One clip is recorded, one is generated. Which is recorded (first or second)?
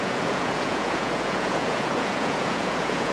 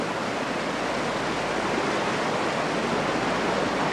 second